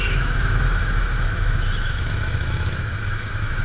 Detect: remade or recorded remade